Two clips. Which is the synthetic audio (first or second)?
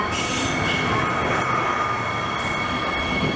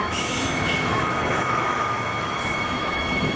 second